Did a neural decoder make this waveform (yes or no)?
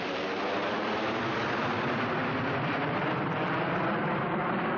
yes